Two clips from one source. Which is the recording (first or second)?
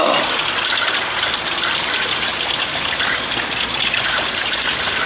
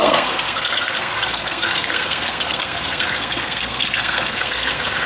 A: first